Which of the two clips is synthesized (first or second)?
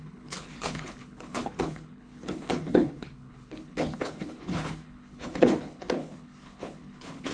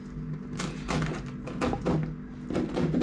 first